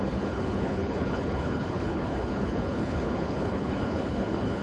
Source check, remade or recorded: remade